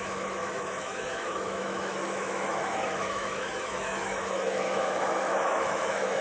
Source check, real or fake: fake